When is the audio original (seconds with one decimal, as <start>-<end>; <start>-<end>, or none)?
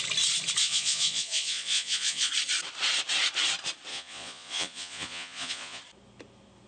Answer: 0.0-0.6; 2.3-3.9; 5.8-6.7